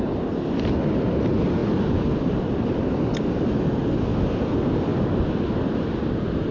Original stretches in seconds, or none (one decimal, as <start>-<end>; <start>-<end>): 4.9-5.5